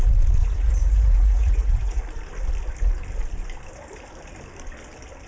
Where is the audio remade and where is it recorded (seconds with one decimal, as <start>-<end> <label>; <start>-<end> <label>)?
0.0-0.4 recorded; 0.4-2.0 remade; 2.0-5.3 recorded